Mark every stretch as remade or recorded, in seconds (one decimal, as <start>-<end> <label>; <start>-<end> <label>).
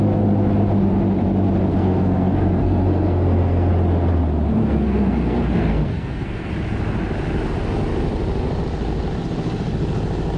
0.0-1.7 recorded; 1.7-3.7 remade; 3.7-4.6 recorded; 4.6-6.5 remade; 6.5-10.4 recorded